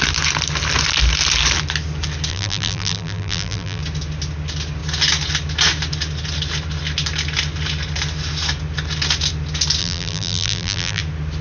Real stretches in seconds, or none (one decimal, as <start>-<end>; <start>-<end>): 0.0-2.3; 3.8-9.8; 11.0-11.4